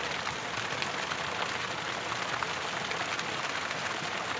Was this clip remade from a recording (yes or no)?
no